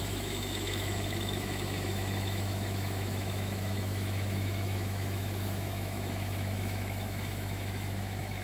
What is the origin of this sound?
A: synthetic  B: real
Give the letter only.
A